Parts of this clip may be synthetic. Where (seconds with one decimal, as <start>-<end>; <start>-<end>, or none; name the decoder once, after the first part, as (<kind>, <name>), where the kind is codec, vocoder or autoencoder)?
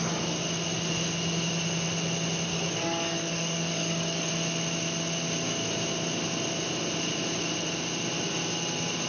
2.5-4.3 (codec, DAC)